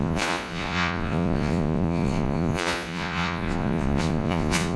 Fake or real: fake